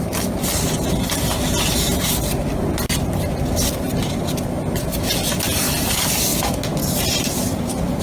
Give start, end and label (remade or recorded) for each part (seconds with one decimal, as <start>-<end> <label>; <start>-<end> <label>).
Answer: 0.0-8.0 recorded